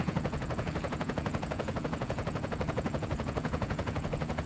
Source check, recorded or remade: remade